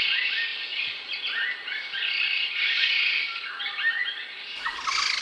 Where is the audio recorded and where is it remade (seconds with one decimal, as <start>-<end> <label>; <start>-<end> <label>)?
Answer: 0.0-5.2 recorded